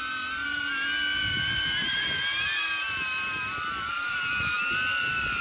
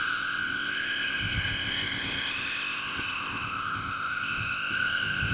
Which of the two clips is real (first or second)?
first